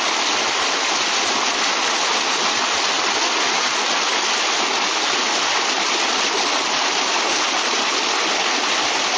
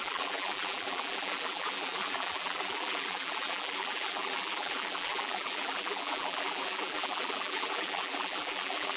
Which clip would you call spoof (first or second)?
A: second